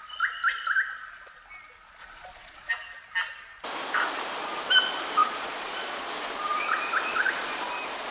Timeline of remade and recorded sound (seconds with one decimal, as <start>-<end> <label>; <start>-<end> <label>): 0.0-2.0 recorded; 2.0-2.7 remade; 2.7-5.2 recorded; 5.2-6.1 remade; 6.1-6.5 recorded; 6.5-7.6 remade; 7.6-8.1 recorded

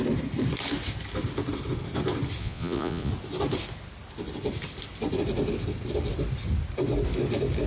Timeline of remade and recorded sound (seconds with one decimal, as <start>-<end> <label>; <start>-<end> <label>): 0.0-2.4 recorded; 2.4-3.1 remade; 3.1-7.7 recorded

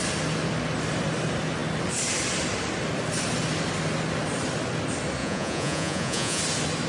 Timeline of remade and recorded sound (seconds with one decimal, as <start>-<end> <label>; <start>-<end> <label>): 0.0-5.2 recorded; 5.2-6.4 remade; 6.4-6.9 recorded

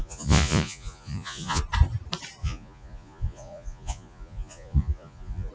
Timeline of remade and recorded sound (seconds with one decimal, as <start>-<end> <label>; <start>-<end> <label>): 0.0-1.6 remade; 1.6-2.4 recorded; 2.4-5.5 remade

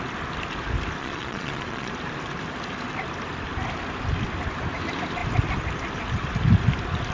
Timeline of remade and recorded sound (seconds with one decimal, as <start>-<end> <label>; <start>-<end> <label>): 0.0-1.0 recorded; 1.0-1.9 remade; 1.9-7.1 recorded

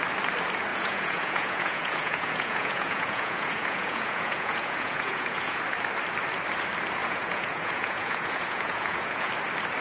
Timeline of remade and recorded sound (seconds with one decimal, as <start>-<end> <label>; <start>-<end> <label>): 0.0-0.7 recorded; 0.7-5.6 remade; 5.6-7.0 recorded; 7.0-9.3 remade; 9.3-9.8 recorded

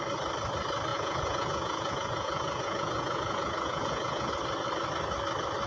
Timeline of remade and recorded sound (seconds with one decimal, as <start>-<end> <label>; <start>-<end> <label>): 0.0-0.9 recorded; 0.9-4.3 remade; 4.3-5.7 recorded

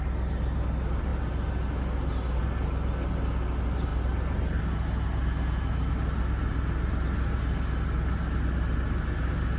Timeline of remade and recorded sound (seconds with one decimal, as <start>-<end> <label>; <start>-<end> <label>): 0.0-9.6 recorded